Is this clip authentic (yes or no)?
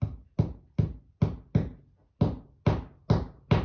yes